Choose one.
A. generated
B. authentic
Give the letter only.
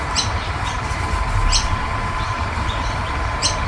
A